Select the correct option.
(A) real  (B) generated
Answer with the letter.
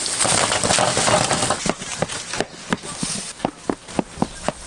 A